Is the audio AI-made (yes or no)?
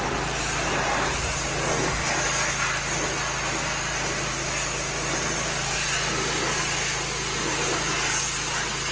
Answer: no